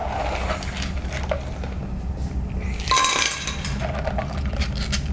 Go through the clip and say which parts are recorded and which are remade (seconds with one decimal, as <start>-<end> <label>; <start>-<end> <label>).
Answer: 0.0-5.1 recorded